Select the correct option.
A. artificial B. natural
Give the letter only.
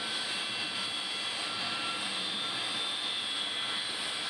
B